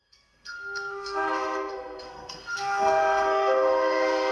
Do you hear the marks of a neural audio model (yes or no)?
yes